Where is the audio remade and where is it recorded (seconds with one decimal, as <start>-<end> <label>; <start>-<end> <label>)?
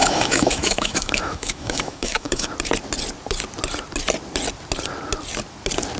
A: 0.0-2.5 remade; 2.5-6.0 recorded